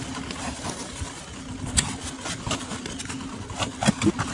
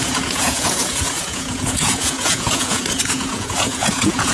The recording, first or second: first